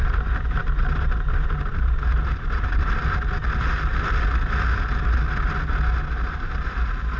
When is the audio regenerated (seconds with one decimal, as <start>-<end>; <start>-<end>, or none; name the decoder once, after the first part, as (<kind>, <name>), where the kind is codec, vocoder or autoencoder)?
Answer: 0.0-3.0 (vocoder, BigVGAN v2); 6.1-7.2